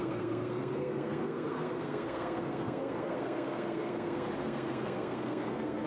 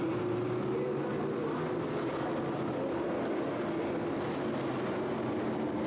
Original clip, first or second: second